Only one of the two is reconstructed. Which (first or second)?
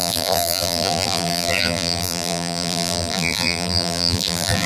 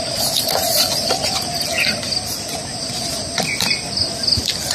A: first